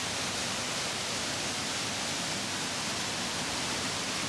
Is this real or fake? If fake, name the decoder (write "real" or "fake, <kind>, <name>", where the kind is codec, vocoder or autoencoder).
real